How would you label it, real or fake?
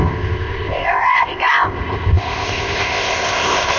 fake